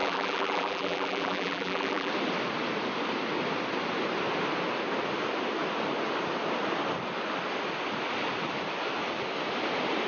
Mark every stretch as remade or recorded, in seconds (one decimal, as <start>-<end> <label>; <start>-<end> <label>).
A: 0.0-2.1 remade; 2.1-10.1 recorded